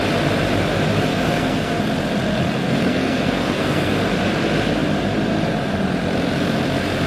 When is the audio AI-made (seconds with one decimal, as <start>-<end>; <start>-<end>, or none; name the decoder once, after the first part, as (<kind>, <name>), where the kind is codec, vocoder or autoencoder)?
1.1-1.8 (codec, SNAC); 2.6-3.9